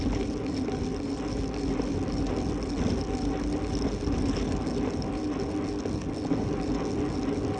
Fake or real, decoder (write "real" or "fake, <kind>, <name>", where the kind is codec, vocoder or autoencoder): real